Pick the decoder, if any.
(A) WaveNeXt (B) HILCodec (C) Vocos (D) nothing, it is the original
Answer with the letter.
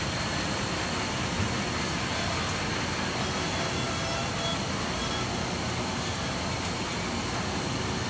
D